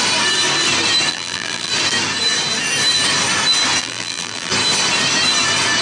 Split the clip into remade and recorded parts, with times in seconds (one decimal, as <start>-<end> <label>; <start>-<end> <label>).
0.0-1.1 recorded; 1.1-1.7 remade; 1.7-3.8 recorded; 3.8-4.5 remade; 4.5-5.8 recorded